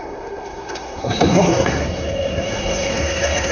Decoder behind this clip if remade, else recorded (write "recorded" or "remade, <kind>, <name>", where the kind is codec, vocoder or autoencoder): remade, codec, SNAC